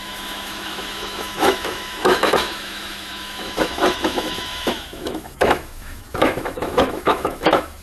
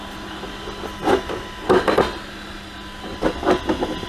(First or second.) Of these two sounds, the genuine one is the second